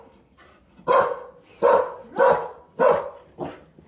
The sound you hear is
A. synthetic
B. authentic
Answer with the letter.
B